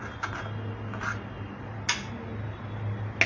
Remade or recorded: recorded